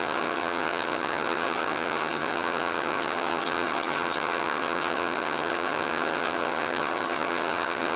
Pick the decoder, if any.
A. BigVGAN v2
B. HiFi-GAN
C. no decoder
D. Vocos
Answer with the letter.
B